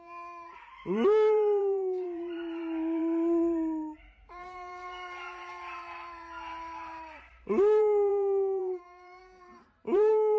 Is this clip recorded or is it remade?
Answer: remade